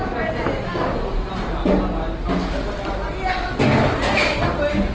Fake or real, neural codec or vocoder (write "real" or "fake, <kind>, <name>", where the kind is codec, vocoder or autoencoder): real